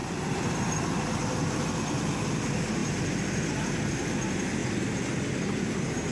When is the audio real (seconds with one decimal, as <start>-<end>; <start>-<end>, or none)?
0.8-2.8; 3.4-6.1